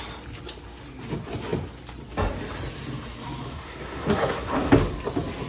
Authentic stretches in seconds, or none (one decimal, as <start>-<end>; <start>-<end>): 0.0-3.5; 4.7-5.5